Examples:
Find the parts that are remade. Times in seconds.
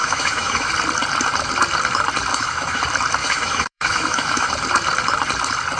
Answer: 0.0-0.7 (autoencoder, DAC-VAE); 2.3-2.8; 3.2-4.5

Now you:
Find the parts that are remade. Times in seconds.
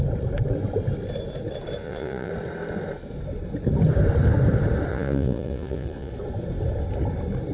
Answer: 1.8-2.3 (vocoder, Vocos); 4.9-6.1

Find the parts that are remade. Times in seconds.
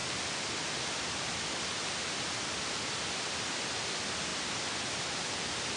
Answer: none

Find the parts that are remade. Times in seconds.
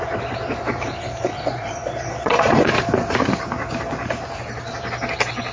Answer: 1.3-2.7 (vocoder, Vocos)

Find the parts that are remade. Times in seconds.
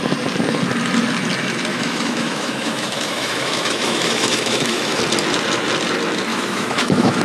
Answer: 1.7-5.0 (autoencoder, DAC-VAE); 6.3-7.2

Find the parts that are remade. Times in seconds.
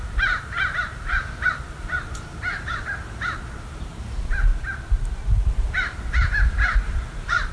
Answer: 0.0-4.5 (vocoder, BigVGAN v2); 5.5-7.5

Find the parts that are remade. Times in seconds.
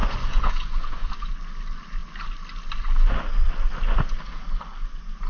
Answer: 0.0-1.1 (vocoder, Vocos)